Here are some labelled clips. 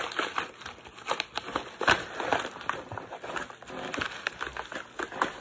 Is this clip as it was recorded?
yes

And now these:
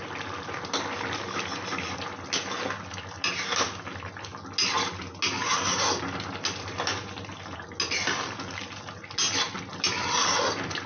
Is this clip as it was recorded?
yes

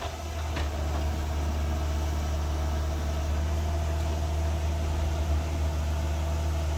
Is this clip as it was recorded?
yes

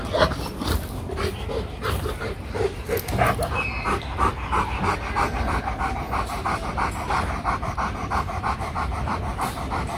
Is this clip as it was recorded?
yes